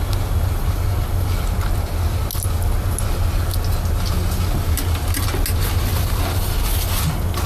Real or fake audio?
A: real